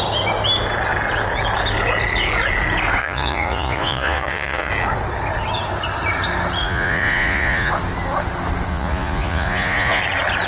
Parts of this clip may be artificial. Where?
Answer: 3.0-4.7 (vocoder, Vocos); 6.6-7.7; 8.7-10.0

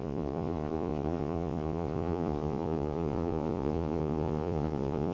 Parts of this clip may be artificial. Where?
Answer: 0.0-5.1 (vocoder, Vocos)